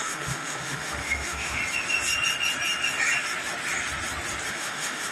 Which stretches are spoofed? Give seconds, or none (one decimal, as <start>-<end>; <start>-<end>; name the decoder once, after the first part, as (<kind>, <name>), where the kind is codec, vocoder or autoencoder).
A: 0.0-1.6 (autoencoder, DAC-VAE); 4.5-5.1